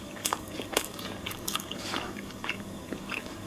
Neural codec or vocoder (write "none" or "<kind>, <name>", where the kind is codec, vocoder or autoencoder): codec, DAC